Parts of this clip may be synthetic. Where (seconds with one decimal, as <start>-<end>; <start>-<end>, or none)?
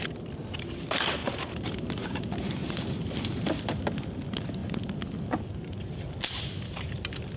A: 1.2-2.2; 2.6-3.5